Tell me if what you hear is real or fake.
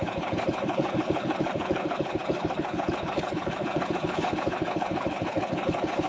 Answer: fake